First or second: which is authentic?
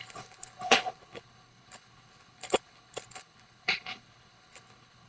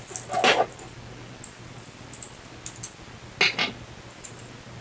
second